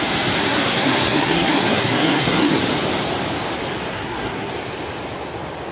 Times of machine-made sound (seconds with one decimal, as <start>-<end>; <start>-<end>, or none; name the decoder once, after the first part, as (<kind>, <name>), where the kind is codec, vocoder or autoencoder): 0.4-2.6 (codec, SNAC); 3.9-4.5